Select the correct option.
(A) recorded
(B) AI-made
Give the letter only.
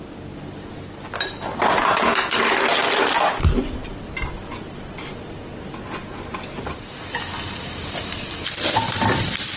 A